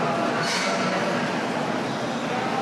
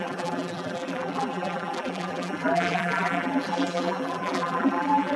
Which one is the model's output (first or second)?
second